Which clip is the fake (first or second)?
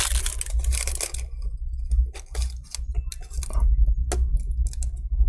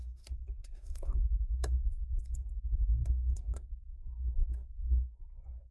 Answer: second